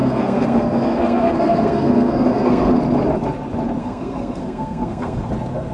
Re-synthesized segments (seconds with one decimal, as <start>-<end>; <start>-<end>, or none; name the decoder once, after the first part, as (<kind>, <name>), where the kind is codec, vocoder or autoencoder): 0.0-2.7 (codec, SNAC); 3.8-5.3

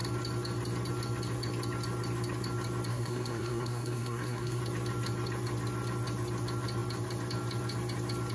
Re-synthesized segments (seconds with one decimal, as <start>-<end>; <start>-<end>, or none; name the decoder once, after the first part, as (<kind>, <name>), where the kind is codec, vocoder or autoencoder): 2.9-4.6 (codec, SNAC)